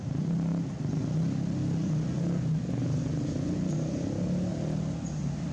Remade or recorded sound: recorded